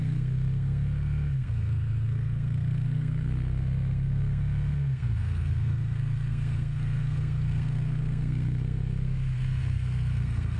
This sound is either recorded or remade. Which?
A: remade